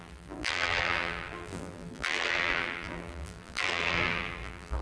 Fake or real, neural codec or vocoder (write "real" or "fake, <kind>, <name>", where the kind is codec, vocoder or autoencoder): fake, vocoder, BigVGAN v2